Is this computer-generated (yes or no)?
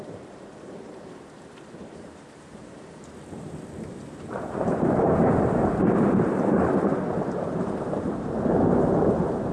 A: yes